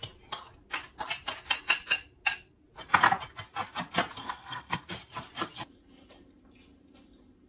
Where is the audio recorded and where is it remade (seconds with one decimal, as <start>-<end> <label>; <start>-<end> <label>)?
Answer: 0.0-4.2 recorded; 4.2-4.9 remade; 4.9-7.5 recorded